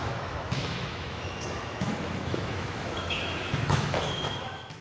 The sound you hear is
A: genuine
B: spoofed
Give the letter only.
B